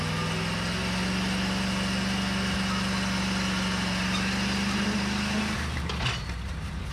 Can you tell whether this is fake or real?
real